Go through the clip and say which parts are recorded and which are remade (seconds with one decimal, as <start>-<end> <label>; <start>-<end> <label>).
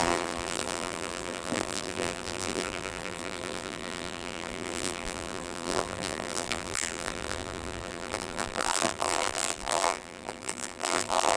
0.0-11.4 remade